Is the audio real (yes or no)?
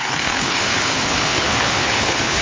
no